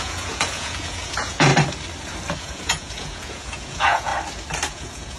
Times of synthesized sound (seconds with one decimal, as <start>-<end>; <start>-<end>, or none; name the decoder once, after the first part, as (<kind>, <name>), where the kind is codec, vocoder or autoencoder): 0.0-1.5 (vocoder, Vocos); 2.4-4.1; 4.7-5.2